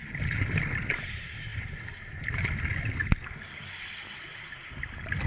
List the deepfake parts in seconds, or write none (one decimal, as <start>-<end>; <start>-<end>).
none